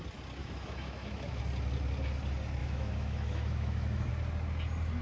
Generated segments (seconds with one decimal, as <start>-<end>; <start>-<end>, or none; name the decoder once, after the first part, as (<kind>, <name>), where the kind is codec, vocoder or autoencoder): 0.4-1.4 (autoencoder, DAC-VAE); 2.6-4.1